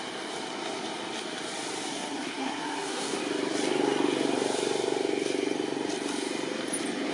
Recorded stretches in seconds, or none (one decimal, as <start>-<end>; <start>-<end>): 0.0-1.9; 3.2-7.1